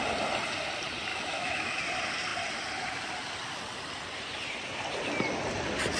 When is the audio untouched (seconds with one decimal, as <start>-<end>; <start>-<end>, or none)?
0.0-1.1; 1.8-6.0